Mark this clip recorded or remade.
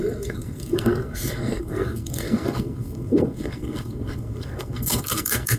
remade